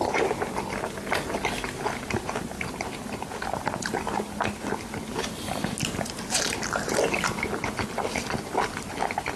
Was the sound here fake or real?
real